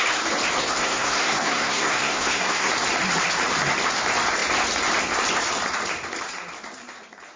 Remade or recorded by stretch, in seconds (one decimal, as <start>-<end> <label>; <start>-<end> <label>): 0.0-0.6 recorded; 0.6-2.7 remade; 2.7-7.4 recorded